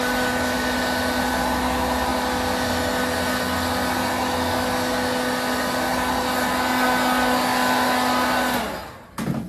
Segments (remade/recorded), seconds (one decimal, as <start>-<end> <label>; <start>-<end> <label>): 0.0-9.5 recorded